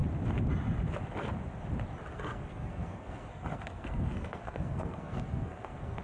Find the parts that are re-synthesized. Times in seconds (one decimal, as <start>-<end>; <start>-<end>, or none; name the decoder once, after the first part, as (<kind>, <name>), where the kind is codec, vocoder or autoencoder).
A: 2.1-6.0 (codec, SNAC)